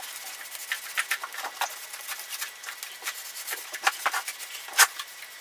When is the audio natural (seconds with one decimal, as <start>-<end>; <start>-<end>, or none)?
0.0-5.4